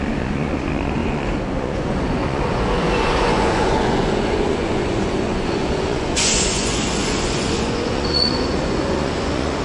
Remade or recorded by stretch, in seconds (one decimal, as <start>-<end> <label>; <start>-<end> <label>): 0.0-9.6 remade